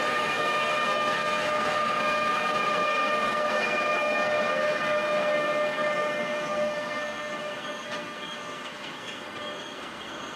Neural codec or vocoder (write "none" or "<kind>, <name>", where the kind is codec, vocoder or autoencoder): codec, SNAC